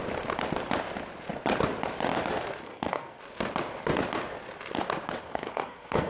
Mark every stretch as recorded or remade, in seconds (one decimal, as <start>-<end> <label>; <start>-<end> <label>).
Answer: 0.0-2.6 recorded; 2.6-3.2 remade; 3.2-5.2 recorded; 5.2-6.1 remade